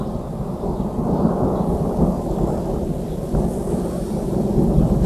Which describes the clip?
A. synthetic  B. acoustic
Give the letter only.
B